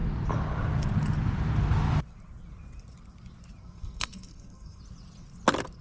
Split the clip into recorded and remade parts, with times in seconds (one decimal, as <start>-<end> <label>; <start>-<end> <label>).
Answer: 0.0-3.6 recorded; 3.6-4.8 remade; 4.8-5.8 recorded